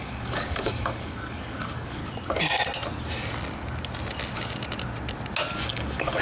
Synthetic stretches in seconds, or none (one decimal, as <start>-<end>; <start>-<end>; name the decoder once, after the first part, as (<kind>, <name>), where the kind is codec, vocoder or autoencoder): 0.0-2.0 (codec, DAC); 5.6-6.2